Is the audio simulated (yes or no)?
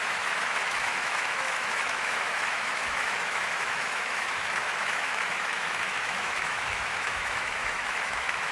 yes